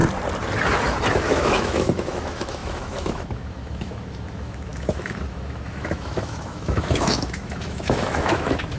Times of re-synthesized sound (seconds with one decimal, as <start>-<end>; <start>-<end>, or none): 1.1-8.8